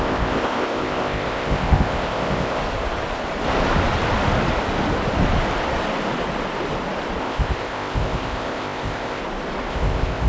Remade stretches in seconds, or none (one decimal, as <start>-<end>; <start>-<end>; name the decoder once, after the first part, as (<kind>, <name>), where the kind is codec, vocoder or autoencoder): 0.0-2.6 (codec, ZipCodec); 7.2-9.2; 9.7-10.3